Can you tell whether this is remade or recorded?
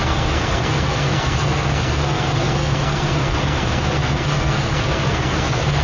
remade